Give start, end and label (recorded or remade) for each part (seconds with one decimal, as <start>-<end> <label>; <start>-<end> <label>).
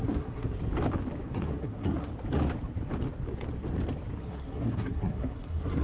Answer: 0.0-0.6 remade; 0.6-1.3 recorded; 1.3-2.1 remade; 2.1-4.2 recorded; 4.2-5.8 remade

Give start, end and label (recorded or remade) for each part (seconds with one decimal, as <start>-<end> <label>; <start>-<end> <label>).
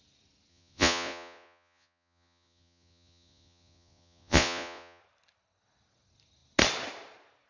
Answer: 0.0-0.5 recorded; 0.5-5.0 remade; 5.0-7.5 recorded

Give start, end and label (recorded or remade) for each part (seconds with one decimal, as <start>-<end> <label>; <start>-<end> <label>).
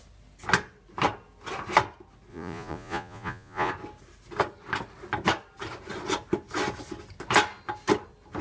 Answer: 0.0-2.3 recorded; 2.3-3.7 remade; 3.7-8.4 recorded